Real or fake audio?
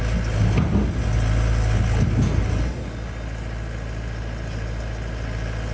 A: real